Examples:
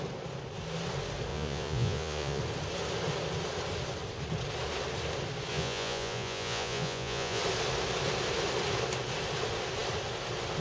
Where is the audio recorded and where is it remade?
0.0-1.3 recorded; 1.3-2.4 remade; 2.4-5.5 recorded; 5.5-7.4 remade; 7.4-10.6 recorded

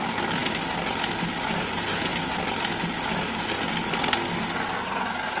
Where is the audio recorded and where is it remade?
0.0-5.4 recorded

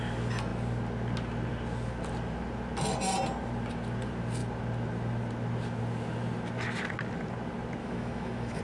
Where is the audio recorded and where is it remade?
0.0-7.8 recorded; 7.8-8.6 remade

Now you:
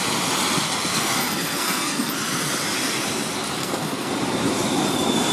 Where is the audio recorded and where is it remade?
0.0-0.9 recorded; 0.9-2.1 remade; 2.1-3.6 recorded; 3.6-4.1 remade; 4.1-5.3 recorded

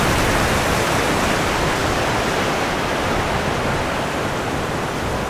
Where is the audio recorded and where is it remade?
0.0-5.3 recorded

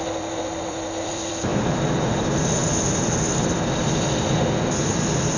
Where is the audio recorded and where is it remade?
0.0-5.4 remade